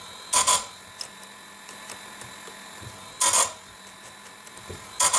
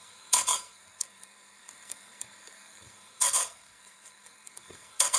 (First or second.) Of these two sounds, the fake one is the second